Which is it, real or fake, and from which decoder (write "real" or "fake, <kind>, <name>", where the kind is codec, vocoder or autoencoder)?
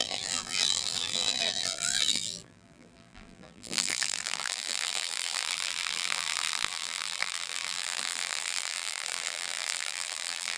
fake, vocoder, BigVGAN v2